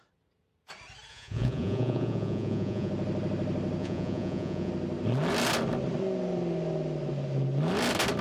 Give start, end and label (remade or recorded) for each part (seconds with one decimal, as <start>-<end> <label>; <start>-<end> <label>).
0.0-1.1 recorded; 1.1-2.9 remade; 2.9-3.8 recorded; 3.8-4.7 remade; 4.7-8.2 recorded